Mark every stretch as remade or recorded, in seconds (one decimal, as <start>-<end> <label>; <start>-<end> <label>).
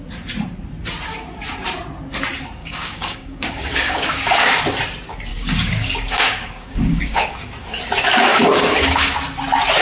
0.0-2.6 recorded; 2.6-4.6 remade; 4.6-5.3 recorded; 5.3-7.4 remade; 7.4-8.3 recorded; 8.3-9.2 remade; 9.2-9.8 recorded